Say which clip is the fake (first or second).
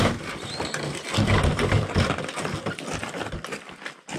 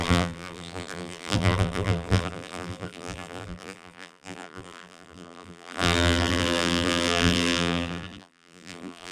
second